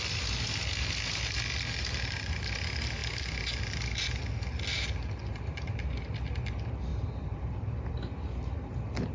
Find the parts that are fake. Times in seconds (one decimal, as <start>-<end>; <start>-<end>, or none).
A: 5.2-5.9; 6.9-7.9